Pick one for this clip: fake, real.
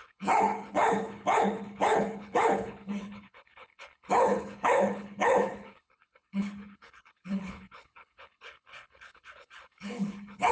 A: fake